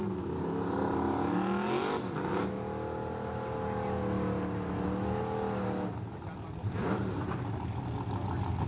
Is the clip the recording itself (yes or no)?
yes